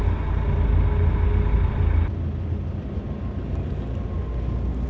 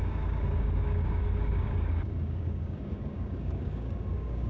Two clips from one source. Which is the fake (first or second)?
second